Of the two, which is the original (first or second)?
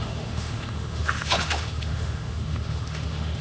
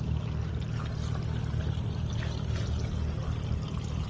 second